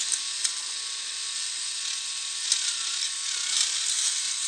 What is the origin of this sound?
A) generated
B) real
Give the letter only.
B